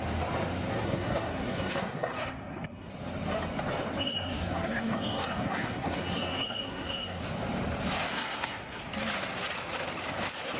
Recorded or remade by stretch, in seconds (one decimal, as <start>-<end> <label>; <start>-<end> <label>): 0.0-0.7 recorded; 0.7-2.9 remade; 2.9-4.0 recorded; 4.0-7.2 remade; 7.2-8.1 recorded; 8.1-8.8 remade; 8.8-10.6 recorded